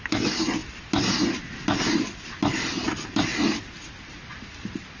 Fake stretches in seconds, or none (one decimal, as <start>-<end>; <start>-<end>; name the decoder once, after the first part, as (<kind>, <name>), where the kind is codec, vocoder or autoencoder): none